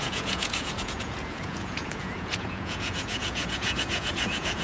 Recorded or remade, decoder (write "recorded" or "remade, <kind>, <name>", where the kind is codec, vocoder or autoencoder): remade, vocoder, Vocos